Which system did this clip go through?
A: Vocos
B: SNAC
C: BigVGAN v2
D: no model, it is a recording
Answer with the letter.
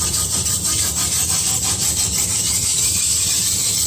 C